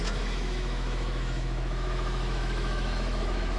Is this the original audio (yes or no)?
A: no